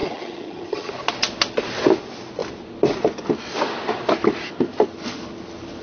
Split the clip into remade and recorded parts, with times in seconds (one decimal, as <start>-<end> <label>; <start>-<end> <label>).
0.0-0.9 remade; 0.9-5.8 recorded